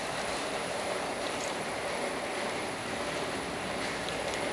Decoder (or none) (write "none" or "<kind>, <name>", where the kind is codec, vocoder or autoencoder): vocoder, BigVGAN v2